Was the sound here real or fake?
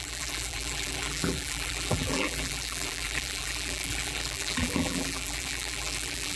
fake